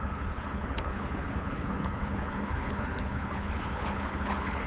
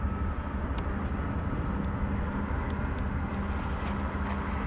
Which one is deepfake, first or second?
first